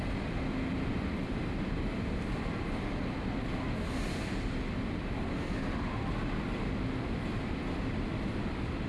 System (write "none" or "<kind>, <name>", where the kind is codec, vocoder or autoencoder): none